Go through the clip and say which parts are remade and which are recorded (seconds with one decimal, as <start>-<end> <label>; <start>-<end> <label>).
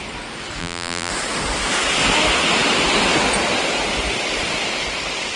0.0-0.6 recorded; 0.6-1.1 remade; 1.1-5.4 recorded